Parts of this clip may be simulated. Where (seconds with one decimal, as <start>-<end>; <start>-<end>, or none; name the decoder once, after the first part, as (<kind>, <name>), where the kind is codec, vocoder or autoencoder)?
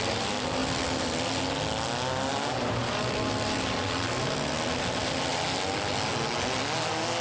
none